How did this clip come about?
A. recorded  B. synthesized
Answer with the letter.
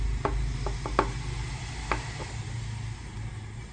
A